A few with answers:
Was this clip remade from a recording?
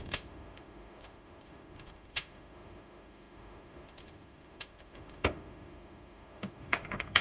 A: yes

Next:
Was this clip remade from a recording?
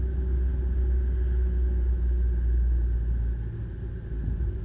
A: no